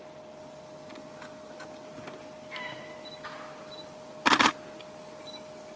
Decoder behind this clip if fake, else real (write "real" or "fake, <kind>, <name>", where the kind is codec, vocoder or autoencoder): real